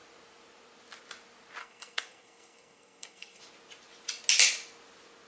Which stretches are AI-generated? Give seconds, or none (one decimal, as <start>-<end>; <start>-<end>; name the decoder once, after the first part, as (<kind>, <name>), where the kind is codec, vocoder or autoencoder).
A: 1.6-3.4 (codec, SNAC)